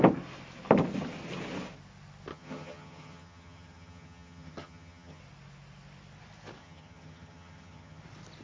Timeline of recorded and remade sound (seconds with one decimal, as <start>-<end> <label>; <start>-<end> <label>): 0.0-2.3 recorded; 2.3-5.2 remade; 5.2-6.6 recorded; 6.6-8.0 remade; 8.0-8.4 recorded